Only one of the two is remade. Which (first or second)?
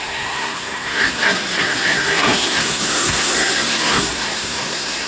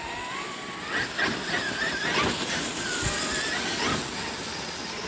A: first